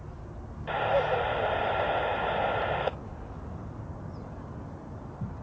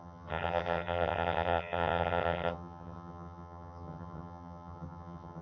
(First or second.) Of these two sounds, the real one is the first